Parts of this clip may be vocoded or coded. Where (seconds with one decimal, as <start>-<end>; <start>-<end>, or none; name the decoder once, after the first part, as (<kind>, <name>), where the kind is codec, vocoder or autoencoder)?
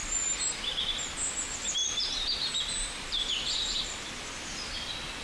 1.8-4.1 (vocoder, BigVGAN v2)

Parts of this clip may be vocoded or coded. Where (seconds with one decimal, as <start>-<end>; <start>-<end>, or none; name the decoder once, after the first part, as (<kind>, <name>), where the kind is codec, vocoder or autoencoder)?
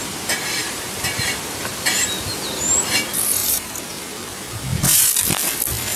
0.6-1.3 (vocoder, BigVGAN v2); 3.4-4.8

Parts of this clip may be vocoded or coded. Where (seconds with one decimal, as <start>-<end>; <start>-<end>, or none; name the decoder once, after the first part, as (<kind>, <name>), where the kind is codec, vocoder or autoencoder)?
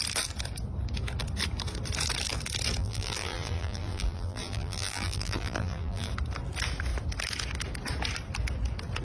2.8-6.1 (vocoder, BigVGAN v2)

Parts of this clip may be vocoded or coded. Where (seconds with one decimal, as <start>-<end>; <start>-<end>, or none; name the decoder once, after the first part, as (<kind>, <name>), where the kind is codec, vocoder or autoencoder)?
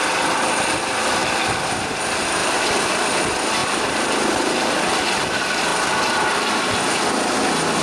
1.2-2.0 (vocoder, BigVGAN v2); 2.4-3.2; 3.6-4.9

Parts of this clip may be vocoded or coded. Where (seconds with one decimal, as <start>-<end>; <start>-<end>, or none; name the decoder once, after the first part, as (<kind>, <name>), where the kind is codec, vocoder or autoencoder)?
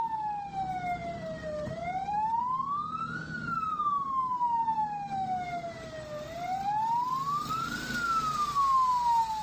1.0-2.4 (vocoder, BigVGAN v2)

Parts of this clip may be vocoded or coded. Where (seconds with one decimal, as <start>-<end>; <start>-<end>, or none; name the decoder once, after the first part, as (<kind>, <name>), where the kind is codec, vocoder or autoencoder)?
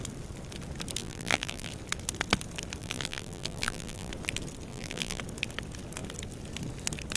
1.0-1.7 (vocoder, BigVGAN v2); 2.8-4.1; 4.7-5.2